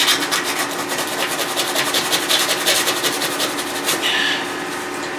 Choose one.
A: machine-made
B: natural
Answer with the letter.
B